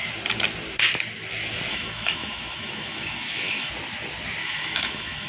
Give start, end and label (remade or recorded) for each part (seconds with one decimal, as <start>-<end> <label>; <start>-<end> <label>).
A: 0.0-1.7 recorded; 1.7-3.7 remade; 3.7-4.4 recorded; 4.4-5.3 remade